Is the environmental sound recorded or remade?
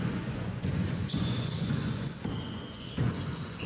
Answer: remade